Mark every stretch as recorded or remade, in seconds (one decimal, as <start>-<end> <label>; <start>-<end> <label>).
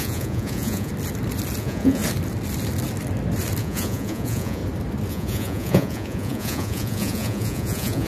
0.0-0.9 remade; 0.9-1.6 recorded; 1.6-2.0 remade; 2.0-3.6 recorded; 3.6-4.6 remade; 4.6-5.1 recorded; 5.1-8.1 remade